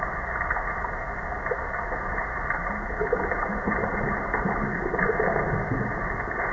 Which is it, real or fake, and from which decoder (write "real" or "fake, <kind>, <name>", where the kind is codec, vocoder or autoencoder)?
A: real